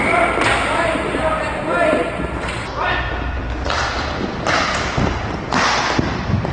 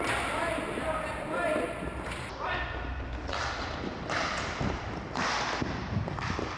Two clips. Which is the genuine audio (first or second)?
first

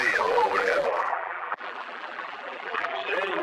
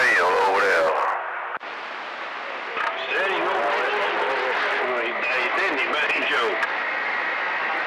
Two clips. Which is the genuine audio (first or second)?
second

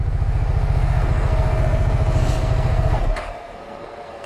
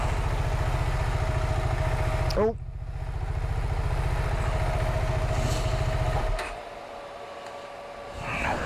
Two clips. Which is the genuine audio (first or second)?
second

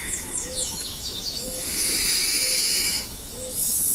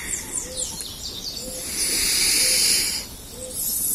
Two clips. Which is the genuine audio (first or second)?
second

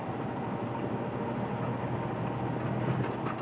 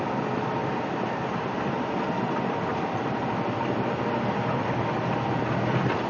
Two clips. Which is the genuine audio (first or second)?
first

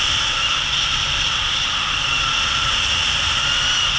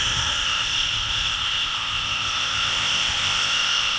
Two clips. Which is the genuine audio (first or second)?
first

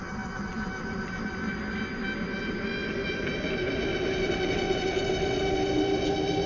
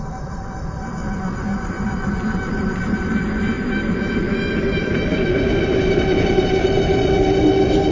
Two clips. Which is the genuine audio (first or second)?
first